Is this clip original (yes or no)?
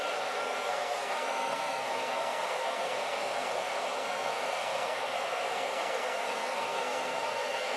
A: no